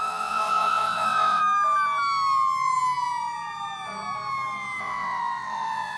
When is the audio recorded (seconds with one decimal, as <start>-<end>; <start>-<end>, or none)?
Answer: 1.4-4.8